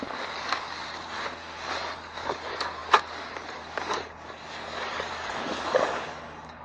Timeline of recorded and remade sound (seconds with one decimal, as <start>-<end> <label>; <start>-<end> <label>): 0.0-0.8 remade; 0.8-1.4 recorded; 1.4-6.6 remade